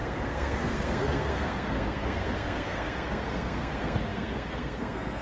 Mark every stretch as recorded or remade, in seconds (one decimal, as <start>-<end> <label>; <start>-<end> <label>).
0.0-5.2 remade